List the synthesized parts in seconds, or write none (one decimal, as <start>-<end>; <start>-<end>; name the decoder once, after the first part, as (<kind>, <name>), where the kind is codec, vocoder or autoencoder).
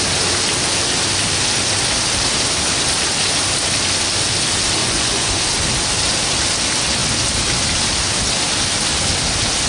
4.8-5.4 (vocoder, Vocos)